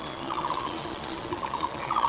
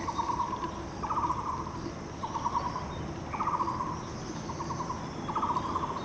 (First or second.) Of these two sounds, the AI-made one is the first